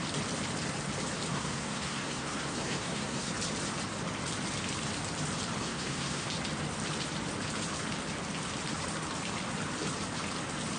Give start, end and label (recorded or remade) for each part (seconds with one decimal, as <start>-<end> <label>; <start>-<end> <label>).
0.0-1.3 recorded; 1.3-3.3 remade; 3.3-5.6 recorded; 5.6-6.3 remade; 6.3-10.8 recorded